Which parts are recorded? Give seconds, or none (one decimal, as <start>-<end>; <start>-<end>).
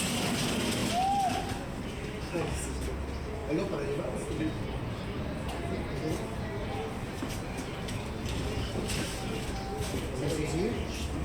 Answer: 0.0-11.2